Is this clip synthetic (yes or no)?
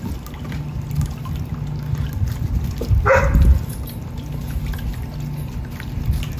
no